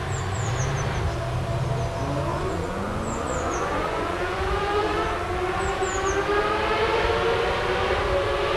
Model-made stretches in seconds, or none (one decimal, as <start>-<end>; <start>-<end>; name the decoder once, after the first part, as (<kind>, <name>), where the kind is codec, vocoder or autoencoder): 2.3-5.2 (vocoder, Vocos)